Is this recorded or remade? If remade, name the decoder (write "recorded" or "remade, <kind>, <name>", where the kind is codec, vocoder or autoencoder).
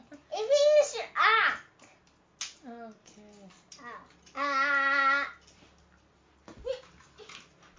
recorded